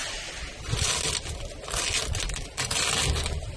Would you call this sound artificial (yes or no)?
no